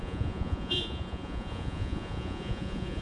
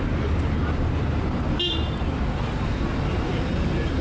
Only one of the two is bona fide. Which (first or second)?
second